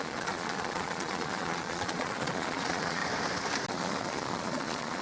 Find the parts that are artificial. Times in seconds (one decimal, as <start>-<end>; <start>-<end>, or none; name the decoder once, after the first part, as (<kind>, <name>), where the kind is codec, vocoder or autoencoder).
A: 0.0-3.0 (vocoder, Vocos); 3.7-5.0